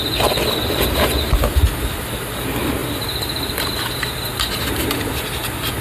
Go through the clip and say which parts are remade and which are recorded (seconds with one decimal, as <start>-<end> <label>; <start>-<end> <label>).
0.0-5.8 recorded